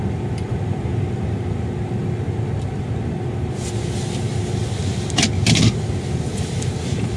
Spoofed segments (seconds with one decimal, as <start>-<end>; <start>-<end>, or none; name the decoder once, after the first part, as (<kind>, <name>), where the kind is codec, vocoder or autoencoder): none